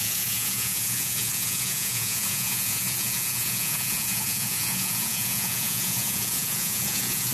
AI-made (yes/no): yes